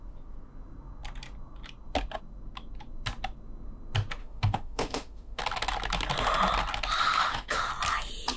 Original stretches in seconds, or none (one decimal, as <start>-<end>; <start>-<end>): 0.0-4.2; 5.4-7.0; 7.7-8.4